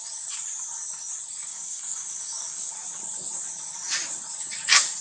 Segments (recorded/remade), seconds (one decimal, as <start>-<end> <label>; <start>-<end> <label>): 0.0-1.5 recorded; 1.5-2.7 remade; 2.7-5.0 recorded